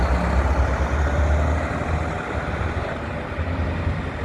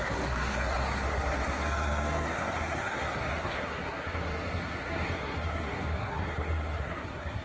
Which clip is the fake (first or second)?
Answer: second